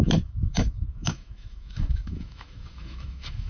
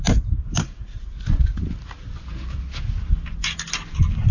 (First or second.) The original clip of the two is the second